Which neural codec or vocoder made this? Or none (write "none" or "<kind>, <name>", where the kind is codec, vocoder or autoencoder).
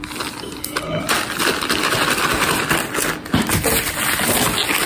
none